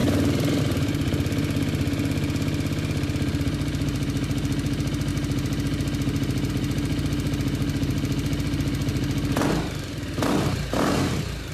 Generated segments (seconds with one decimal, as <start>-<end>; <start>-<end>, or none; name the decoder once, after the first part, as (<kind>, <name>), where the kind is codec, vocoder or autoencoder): none